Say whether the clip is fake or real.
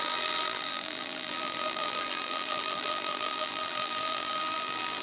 fake